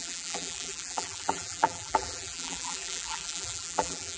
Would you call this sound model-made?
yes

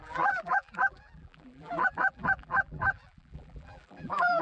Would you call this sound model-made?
yes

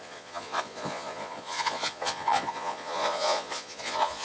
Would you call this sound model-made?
yes